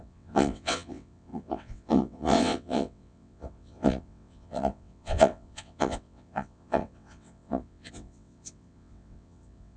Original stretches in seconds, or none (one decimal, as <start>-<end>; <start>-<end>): none